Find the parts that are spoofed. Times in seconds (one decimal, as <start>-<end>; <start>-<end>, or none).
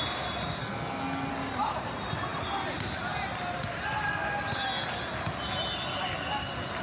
0.6-1.3